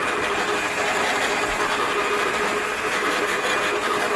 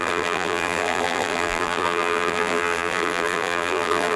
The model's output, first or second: second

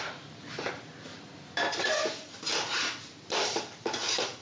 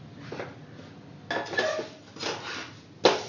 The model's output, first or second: first